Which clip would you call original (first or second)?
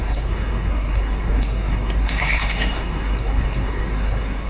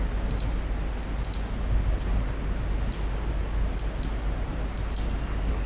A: second